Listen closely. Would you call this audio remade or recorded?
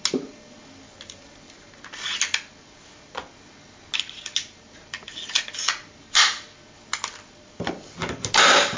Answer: recorded